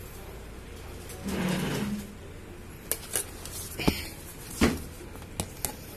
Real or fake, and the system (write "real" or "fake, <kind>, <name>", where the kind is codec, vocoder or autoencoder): real